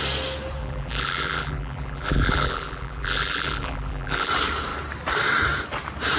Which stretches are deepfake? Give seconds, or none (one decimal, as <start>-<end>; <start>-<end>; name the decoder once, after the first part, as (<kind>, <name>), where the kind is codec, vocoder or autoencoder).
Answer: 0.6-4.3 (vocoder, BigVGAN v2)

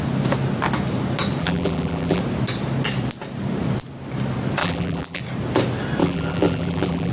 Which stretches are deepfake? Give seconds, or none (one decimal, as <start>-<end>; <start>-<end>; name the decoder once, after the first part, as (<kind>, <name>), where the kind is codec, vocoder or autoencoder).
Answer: 1.4-2.2 (vocoder, BigVGAN v2); 4.6-5.2; 6.0-7.1

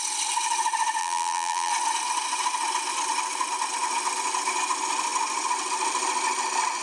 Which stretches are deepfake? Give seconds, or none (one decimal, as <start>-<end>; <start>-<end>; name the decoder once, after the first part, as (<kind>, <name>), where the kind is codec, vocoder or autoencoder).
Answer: 1.0-1.7 (vocoder, BigVGAN v2)

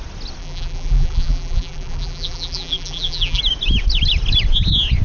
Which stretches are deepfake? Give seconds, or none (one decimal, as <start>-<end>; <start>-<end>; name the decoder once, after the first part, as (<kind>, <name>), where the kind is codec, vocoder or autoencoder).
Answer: 0.4-3.4 (vocoder, BigVGAN v2)

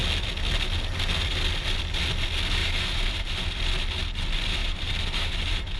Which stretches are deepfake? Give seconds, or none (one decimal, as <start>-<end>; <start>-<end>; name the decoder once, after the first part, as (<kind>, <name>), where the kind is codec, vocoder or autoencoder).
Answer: 2.6-3.3 (vocoder, BigVGAN v2); 4.6-5.8

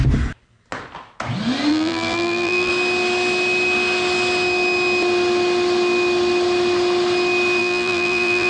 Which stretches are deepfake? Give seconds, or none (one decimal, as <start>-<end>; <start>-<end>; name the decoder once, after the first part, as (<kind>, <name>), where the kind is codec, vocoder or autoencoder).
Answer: 1.7-2.7 (vocoder, BigVGAN v2); 7.6-8.5

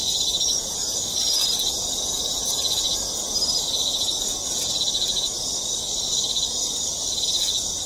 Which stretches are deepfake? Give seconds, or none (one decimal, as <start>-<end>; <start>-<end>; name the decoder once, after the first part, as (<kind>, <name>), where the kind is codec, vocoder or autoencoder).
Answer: none

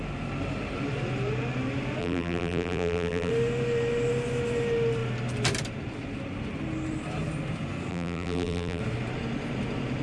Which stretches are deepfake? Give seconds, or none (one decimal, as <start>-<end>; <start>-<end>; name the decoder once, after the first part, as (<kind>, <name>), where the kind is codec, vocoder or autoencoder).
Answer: 2.0-3.3 (vocoder, BigVGAN v2); 7.9-8.8